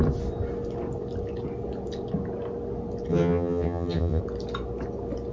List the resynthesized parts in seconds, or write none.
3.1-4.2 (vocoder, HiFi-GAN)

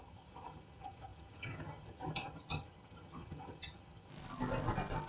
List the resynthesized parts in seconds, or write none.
0.0-4.1 (vocoder, HiFi-GAN)

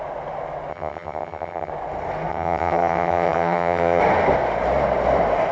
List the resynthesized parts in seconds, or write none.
0.7-1.7 (vocoder, HiFi-GAN); 2.3-4.0

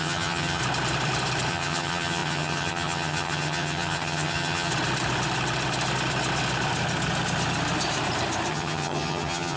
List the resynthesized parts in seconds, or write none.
0.0-0.6 (vocoder, HiFi-GAN); 1.5-4.7; 8.5-9.6

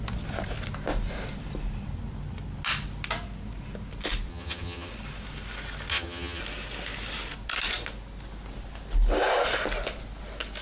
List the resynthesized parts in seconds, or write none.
4.3-4.9 (vocoder, HiFi-GAN); 5.9-6.4